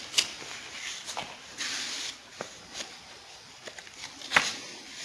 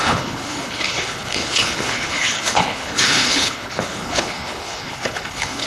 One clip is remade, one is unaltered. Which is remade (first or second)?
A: second